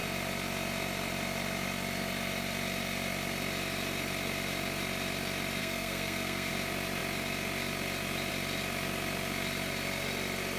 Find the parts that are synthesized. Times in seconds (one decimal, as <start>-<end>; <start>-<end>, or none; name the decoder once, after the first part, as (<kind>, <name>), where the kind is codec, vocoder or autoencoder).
5.6-6.5 (codec, SNAC)